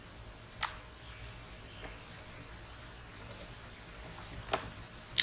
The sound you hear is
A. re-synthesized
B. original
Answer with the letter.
B